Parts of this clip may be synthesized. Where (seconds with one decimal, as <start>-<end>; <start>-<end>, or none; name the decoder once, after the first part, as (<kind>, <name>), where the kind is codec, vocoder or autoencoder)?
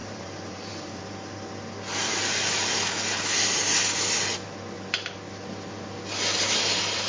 0.0-1.0 (vocoder, BigVGAN v2)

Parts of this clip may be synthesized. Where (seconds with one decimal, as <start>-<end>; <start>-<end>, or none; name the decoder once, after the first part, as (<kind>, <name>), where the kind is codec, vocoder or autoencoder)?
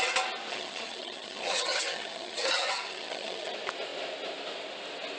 0.5-3.5 (vocoder, HiFi-GAN)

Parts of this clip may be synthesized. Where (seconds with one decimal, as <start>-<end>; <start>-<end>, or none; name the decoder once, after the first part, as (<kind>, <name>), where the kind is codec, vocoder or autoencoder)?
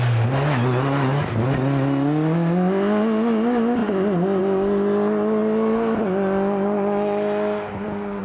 none